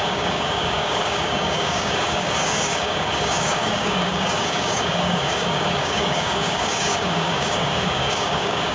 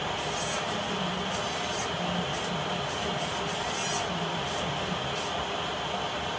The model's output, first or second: first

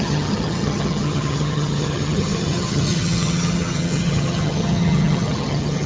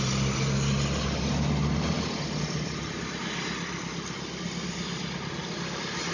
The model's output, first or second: first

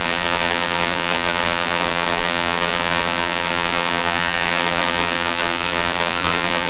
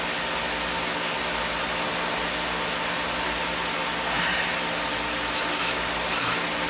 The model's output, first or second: first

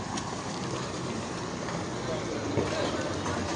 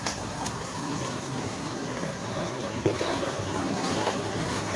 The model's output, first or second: second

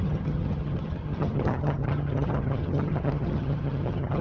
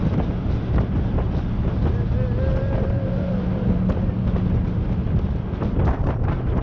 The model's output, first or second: first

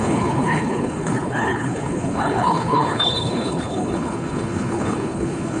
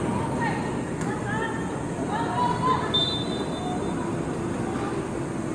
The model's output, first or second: first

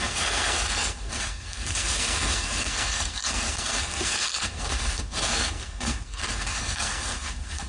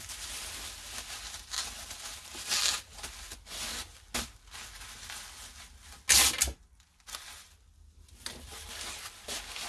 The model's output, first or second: first